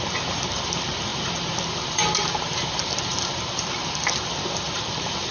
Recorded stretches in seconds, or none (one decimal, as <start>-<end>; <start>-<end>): none